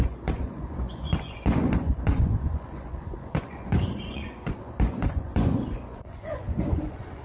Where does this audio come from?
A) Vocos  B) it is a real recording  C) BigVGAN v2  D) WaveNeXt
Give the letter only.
A